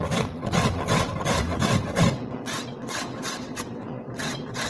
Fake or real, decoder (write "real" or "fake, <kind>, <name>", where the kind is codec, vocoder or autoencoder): fake, vocoder, WaveNeXt